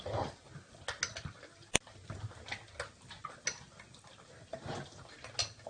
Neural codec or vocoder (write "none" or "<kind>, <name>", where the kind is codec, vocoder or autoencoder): none